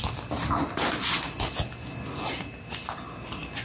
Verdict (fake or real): real